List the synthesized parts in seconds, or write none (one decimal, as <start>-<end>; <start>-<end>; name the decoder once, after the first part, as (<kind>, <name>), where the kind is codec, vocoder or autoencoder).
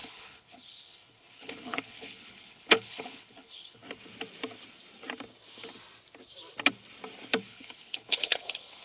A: 0.0-3.8 (codec, HILCodec); 7.5-8.8